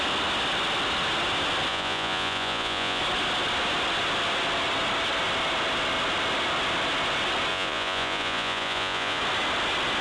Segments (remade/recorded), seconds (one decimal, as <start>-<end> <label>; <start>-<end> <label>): 0.0-1.7 recorded; 1.7-3.0 remade; 3.0-7.5 recorded; 7.5-9.2 remade; 9.2-10.0 recorded